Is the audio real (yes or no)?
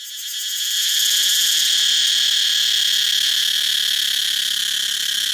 yes